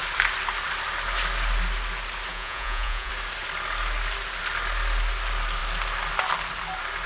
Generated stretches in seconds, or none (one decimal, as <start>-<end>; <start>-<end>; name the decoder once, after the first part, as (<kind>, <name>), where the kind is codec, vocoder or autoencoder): 2.3-3.1 (vocoder, Vocos)